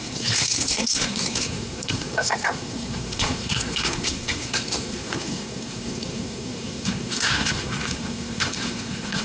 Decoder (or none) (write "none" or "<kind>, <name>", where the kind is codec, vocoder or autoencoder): codec, SNAC